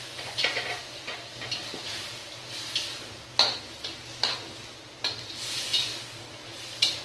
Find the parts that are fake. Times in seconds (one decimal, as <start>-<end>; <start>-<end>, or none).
0.0-1.3; 5.5-5.9